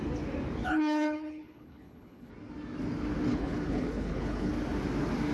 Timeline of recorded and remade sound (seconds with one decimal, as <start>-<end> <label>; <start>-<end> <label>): 0.0-0.6 recorded; 0.6-2.3 remade; 2.3-3.3 recorded; 3.3-4.5 remade; 4.5-5.3 recorded